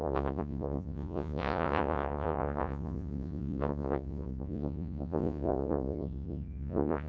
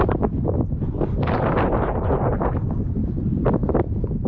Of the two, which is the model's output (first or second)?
first